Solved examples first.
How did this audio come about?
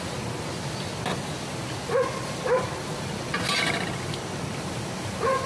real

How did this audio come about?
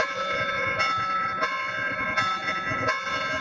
fake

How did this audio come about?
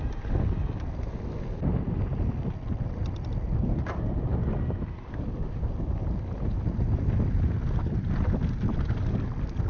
real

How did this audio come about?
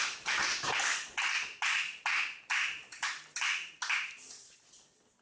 real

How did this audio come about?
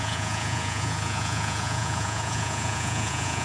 fake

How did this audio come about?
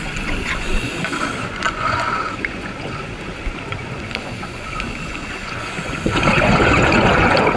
fake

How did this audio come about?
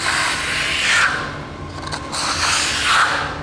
real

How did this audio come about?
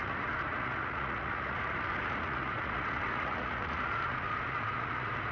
fake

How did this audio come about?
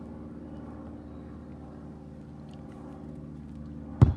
real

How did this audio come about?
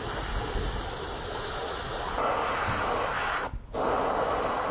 real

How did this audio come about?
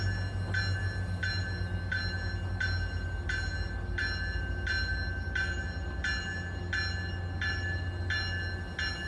real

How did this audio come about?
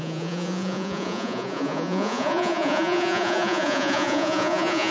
fake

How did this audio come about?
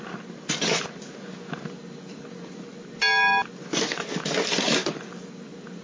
real